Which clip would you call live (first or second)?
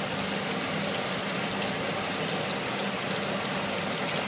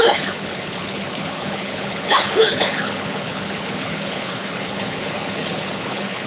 first